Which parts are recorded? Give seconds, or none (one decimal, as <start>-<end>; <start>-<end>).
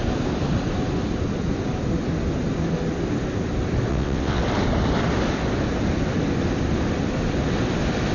0.0-3.9; 4.4-8.1